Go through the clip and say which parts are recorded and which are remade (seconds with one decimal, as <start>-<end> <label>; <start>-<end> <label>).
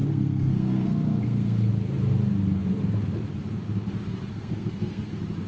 0.0-1.7 remade; 1.7-4.3 recorded; 4.3-5.1 remade; 5.1-5.5 recorded